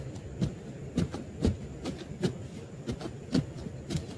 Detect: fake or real real